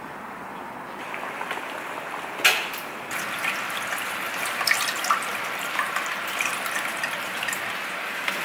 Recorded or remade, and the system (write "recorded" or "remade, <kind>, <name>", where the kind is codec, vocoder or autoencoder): remade, vocoder, BigVGAN v2